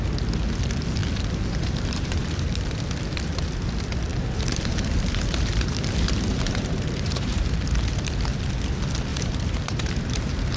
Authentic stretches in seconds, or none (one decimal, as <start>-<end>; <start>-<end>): 0.0-1.0; 2.8-4.1; 7.9-9.1